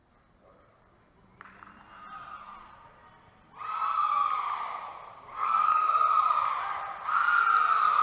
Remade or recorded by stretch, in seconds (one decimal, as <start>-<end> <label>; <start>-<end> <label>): 0.0-5.3 recorded; 5.3-5.9 remade; 5.9-8.0 recorded

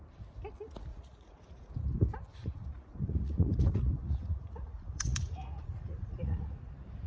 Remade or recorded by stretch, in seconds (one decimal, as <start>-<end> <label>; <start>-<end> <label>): 0.0-0.9 recorded; 0.9-1.7 remade; 1.7-2.3 recorded; 2.3-6.6 remade; 6.6-7.1 recorded

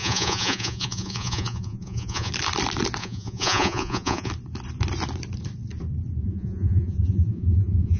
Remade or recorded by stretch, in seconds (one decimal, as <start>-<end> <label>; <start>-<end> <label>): 0.0-2.3 remade; 2.3-3.0 recorded; 3.0-4.3 remade; 4.3-6.2 recorded; 6.2-8.0 remade

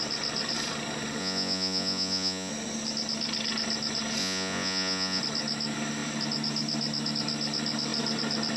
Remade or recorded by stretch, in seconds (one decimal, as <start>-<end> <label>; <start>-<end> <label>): 0.0-1.2 recorded; 1.2-2.5 remade; 2.5-4.2 recorded; 4.2-5.2 remade; 5.2-8.6 recorded

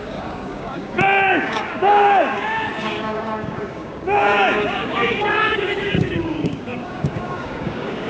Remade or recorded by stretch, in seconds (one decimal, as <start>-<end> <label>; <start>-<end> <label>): 0.0-8.1 remade